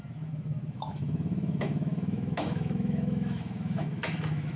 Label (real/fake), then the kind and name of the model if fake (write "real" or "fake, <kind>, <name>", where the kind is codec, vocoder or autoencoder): fake, autoencoder, DAC-VAE